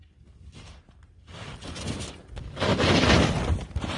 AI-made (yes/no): no